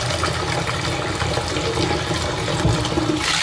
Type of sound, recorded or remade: recorded